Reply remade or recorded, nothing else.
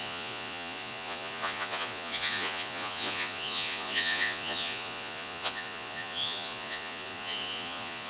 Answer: remade